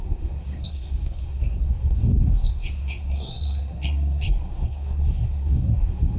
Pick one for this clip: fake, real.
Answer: fake